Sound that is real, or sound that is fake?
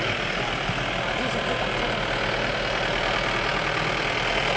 real